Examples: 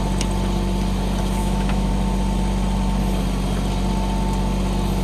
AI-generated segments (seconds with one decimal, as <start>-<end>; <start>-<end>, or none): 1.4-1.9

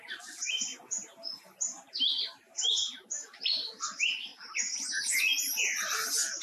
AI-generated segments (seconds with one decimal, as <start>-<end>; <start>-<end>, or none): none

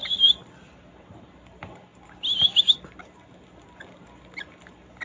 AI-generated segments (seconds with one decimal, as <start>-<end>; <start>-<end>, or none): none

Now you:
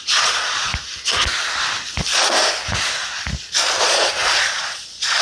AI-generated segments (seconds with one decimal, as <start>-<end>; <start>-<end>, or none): 0.0-0.7; 3.8-5.2